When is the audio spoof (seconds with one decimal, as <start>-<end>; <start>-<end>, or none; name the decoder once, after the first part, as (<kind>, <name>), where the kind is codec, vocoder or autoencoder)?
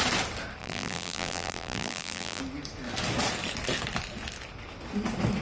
0.6-2.4 (vocoder, BigVGAN v2)